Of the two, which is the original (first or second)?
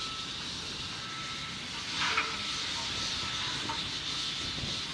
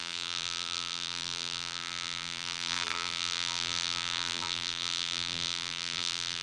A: first